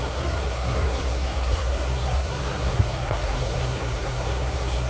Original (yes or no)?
no